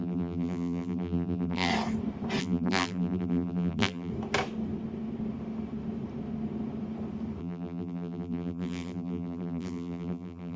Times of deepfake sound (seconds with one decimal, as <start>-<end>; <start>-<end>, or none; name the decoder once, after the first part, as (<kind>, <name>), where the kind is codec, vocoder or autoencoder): 0.0-1.7 (vocoder, BigVGAN v2); 2.4-4.1; 7.4-10.6